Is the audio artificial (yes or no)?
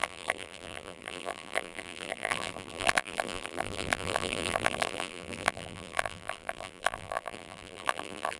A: yes